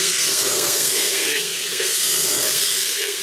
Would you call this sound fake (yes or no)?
yes